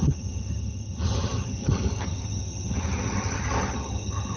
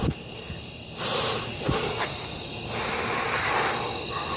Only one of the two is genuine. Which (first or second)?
second